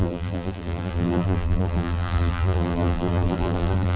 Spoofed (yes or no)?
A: yes